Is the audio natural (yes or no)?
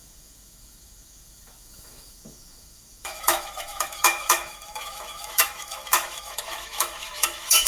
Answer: no